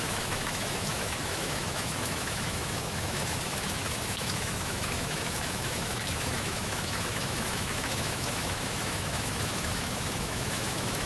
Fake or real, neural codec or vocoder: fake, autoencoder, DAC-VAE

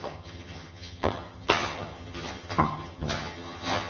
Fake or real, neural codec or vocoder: fake, vocoder, HiFi-GAN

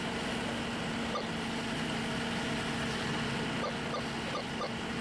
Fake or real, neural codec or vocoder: real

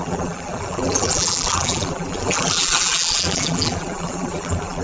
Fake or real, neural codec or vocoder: fake, vocoder, BigVGAN v2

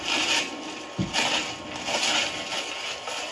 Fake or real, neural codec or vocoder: real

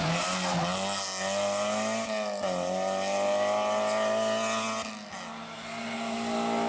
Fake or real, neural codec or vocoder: real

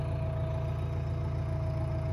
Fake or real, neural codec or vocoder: real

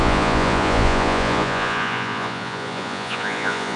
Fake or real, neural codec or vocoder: fake, vocoder, Vocos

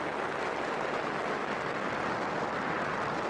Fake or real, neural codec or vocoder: real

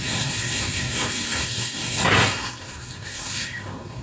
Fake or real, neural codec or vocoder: fake, codec, SNAC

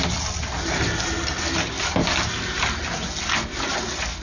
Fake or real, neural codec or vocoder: real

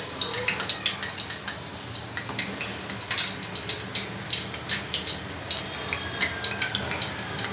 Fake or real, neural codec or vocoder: real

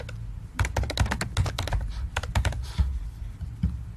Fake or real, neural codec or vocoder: real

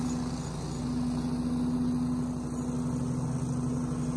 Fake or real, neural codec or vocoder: real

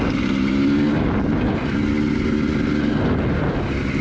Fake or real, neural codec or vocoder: real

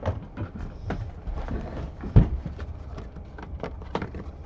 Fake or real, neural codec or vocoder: fake, vocoder, BigVGAN v2